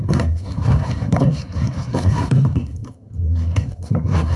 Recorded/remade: remade